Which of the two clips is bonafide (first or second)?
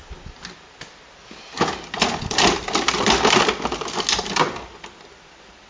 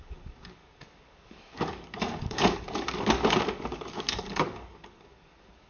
first